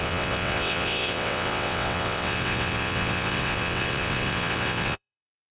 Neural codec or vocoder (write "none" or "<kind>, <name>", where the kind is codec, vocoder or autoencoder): vocoder, WaveNeXt